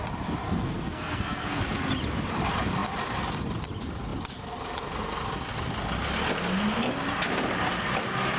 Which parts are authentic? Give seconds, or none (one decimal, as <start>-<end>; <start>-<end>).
0.0-0.4; 1.6-8.4